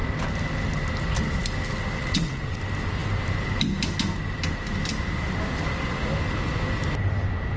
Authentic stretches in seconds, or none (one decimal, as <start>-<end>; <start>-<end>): 0.0-2.0; 2.6-7.6